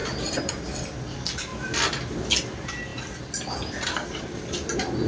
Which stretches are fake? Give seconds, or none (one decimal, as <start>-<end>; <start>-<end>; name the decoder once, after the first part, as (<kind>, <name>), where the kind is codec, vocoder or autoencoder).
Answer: none